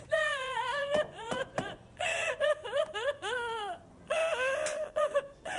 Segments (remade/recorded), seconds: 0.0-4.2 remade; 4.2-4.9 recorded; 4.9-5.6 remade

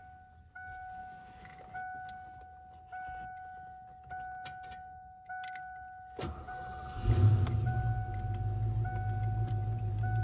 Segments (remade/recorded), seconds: 0.0-1.0 recorded; 1.0-1.6 remade; 1.6-10.2 recorded

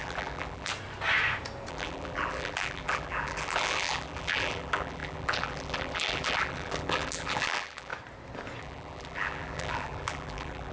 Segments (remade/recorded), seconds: 0.0-0.7 remade; 0.7-1.7 recorded; 1.7-7.9 remade; 7.9-8.6 recorded; 8.6-10.7 remade

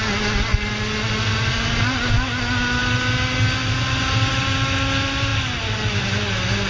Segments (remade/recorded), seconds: 0.0-6.7 recorded

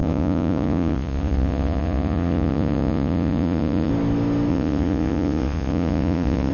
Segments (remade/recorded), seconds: 0.0-3.9 remade; 3.9-4.5 recorded; 4.5-6.5 remade

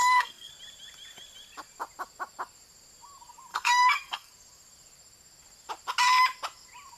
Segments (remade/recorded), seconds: 0.0-0.5 remade; 0.5-3.5 recorded; 3.5-4.3 remade; 4.3-7.0 recorded

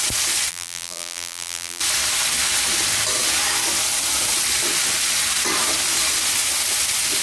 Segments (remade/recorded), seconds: 0.0-0.5 recorded; 0.5-1.8 remade; 1.8-7.2 recorded